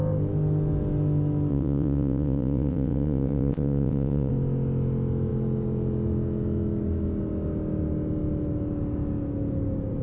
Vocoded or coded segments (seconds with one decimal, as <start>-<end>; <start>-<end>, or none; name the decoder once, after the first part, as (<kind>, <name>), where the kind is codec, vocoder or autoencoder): 1.5-4.3 (vocoder, WaveNeXt)